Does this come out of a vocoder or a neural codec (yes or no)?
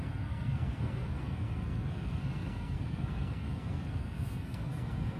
yes